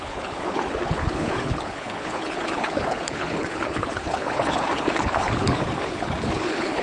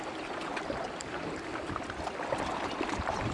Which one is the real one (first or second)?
second